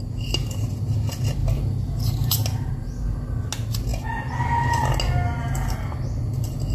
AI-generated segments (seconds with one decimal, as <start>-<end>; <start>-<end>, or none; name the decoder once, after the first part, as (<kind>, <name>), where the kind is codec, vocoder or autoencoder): 1.4-2.7 (vocoder, BigVGAN v2)